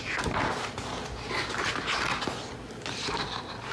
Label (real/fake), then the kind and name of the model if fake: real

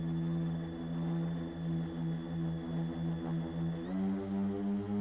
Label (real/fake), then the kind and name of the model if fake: real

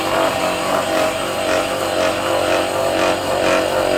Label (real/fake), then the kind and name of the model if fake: real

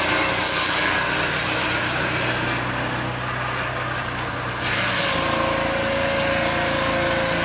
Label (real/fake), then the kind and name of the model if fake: real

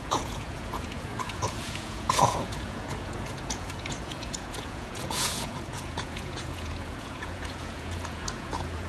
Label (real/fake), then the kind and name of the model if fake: fake, vocoder, Vocos